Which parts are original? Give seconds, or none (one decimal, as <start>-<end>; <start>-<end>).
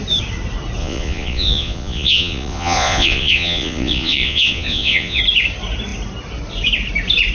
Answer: 0.0-0.8; 5.2-7.3